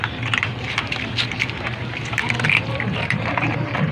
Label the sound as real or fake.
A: fake